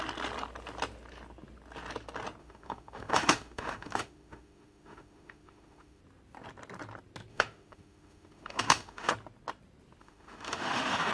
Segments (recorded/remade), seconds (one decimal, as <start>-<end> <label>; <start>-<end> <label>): 0.0-2.4 recorded; 2.4-6.0 remade; 6.0-7.3 recorded; 7.3-9.1 remade; 9.1-10.0 recorded; 10.0-11.1 remade